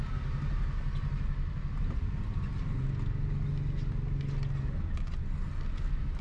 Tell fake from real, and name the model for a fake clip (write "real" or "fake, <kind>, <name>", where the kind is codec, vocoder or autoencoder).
real